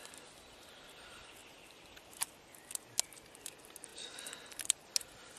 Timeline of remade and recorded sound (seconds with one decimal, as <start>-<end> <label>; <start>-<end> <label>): 0.0-1.4 recorded; 1.4-2.3 remade; 2.3-5.4 recorded